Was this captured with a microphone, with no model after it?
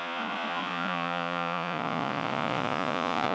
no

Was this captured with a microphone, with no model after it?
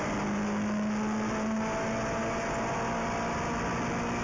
yes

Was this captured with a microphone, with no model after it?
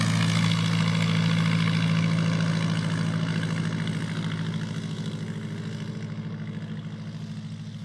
yes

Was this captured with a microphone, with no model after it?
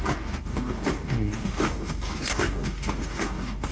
no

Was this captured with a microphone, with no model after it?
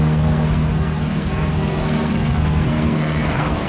no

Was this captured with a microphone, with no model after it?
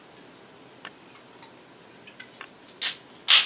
yes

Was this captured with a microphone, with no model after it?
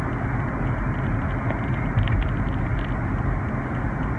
yes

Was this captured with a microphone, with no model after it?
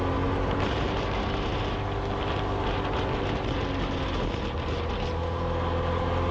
yes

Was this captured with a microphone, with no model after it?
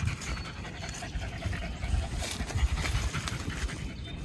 yes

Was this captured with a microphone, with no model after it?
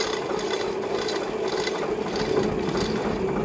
yes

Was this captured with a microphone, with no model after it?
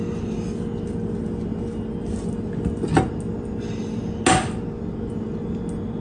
yes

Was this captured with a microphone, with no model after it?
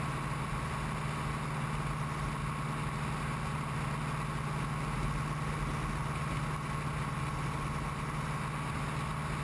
yes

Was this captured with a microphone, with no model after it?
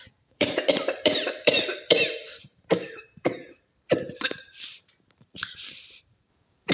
no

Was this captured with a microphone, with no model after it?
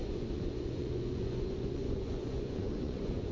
no